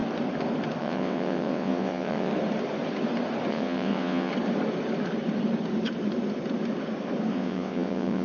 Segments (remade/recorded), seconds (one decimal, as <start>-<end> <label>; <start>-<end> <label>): 0.0-0.8 recorded; 0.8-2.3 remade; 2.3-3.5 recorded; 3.5-4.3 remade; 4.3-7.3 recorded; 7.3-8.2 remade